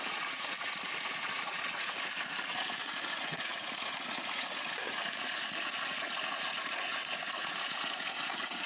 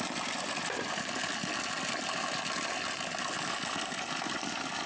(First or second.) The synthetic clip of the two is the first